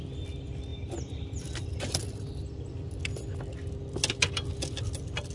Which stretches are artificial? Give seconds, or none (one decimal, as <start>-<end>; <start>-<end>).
none